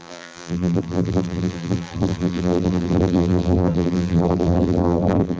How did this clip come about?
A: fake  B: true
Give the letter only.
A